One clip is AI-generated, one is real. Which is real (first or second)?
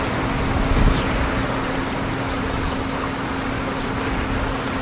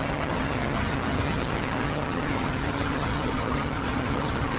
first